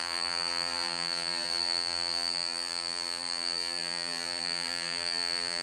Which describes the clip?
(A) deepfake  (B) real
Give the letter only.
A